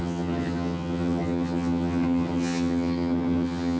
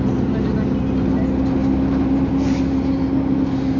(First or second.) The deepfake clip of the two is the first